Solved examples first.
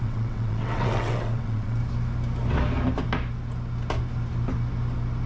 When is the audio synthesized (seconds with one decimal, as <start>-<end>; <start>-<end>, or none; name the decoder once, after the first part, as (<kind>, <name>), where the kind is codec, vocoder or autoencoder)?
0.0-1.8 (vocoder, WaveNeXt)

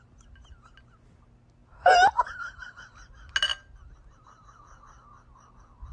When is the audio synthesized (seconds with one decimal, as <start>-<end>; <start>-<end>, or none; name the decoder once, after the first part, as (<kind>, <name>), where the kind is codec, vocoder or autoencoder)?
none

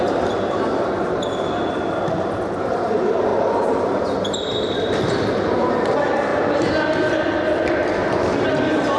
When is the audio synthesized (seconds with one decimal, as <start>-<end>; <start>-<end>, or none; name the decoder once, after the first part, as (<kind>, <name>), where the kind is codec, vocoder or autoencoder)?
none

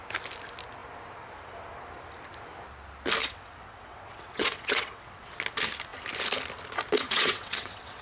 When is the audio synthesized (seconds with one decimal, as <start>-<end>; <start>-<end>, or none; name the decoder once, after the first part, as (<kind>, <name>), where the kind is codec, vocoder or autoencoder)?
3.2-5.3 (vocoder, WaveNeXt); 7.0-8.0

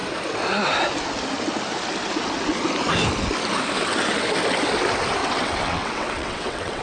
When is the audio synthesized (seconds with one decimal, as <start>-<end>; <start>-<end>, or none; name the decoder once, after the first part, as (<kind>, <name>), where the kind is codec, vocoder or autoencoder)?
5.2-6.8 (vocoder, WaveNeXt)

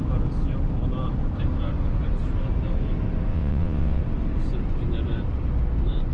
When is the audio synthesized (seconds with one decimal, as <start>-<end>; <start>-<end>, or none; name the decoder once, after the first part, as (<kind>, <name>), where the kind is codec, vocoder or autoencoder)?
3.3-4.0 (vocoder, WaveNeXt)